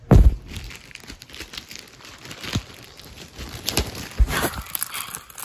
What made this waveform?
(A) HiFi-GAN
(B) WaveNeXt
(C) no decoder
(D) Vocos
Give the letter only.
C